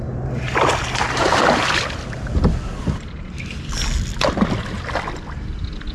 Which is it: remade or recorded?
recorded